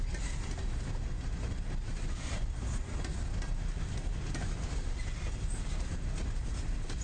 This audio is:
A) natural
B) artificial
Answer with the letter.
A